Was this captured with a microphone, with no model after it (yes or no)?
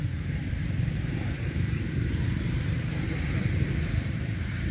no